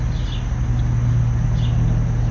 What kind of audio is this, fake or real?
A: real